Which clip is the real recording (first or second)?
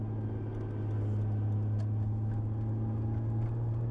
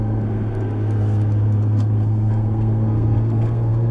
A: first